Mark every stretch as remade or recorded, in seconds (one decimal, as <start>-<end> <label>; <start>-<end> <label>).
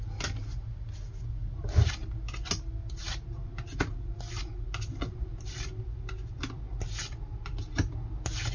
0.0-8.5 recorded